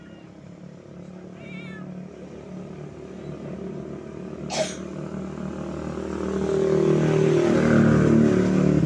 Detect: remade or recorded recorded